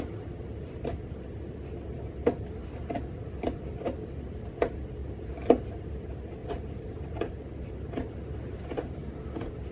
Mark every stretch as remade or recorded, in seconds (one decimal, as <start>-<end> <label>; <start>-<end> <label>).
0.0-5.0 recorded; 5.0-6.0 remade; 6.0-6.4 recorded; 6.4-7.2 remade; 7.2-9.7 recorded